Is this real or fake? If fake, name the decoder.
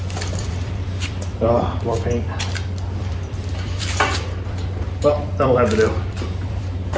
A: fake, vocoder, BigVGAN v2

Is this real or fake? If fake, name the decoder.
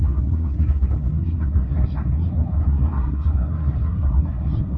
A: fake, codec, SNAC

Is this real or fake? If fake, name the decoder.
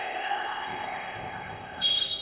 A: fake, codec, ZipCodec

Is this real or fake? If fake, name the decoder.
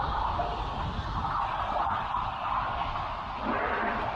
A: real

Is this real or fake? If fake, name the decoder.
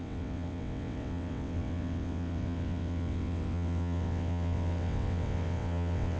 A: fake, vocoder, WaveNeXt